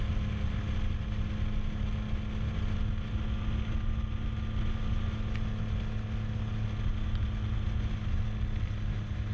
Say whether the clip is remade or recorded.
recorded